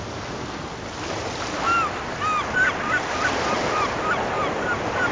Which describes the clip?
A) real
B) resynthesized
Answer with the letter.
A